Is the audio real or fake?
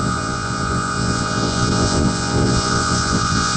fake